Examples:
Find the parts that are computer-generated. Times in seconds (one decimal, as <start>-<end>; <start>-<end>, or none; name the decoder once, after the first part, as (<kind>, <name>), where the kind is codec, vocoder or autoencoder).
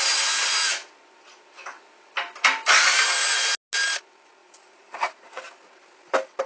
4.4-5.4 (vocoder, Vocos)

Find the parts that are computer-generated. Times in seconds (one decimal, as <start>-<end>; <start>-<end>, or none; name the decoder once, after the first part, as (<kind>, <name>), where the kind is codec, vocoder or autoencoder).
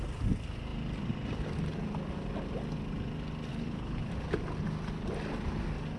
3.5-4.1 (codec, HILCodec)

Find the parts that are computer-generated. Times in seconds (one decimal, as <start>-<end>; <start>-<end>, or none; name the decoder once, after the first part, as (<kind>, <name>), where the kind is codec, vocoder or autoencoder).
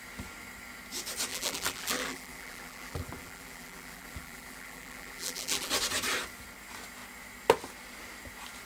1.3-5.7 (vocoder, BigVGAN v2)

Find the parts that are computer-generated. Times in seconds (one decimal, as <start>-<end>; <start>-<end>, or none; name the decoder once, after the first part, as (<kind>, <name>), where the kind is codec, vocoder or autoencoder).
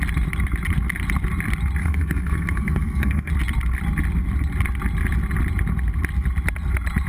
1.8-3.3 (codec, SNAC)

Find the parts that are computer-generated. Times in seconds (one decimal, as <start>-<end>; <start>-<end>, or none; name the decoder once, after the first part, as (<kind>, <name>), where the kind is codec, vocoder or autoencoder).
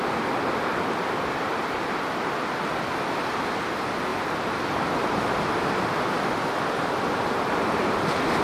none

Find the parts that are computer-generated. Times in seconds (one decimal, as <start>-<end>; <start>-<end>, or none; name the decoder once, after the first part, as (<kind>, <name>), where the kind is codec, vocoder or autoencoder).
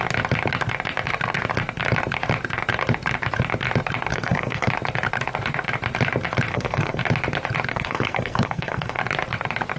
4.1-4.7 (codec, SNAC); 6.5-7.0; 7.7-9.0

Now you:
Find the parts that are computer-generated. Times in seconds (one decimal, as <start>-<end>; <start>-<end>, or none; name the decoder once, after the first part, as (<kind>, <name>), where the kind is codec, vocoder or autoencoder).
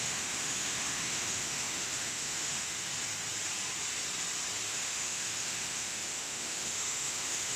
0.0-2.9 (autoencoder, DAC-VAE); 4.7-7.6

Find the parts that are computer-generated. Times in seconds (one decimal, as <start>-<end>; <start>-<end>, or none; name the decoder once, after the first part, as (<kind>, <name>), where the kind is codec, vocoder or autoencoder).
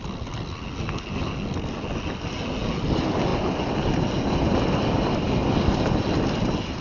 none